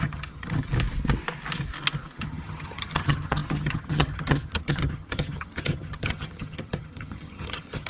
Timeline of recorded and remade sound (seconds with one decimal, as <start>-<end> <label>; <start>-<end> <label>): 0.0-0.7 remade; 0.7-2.2 recorded; 2.2-7.9 remade